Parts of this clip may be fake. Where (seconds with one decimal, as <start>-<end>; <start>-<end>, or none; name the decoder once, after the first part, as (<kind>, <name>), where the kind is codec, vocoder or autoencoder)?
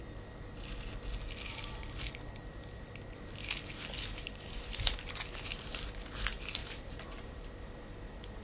6.6-7.6 (vocoder, BigVGAN v2)